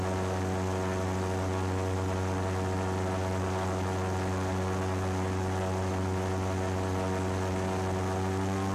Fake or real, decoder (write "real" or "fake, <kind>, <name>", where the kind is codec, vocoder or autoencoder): real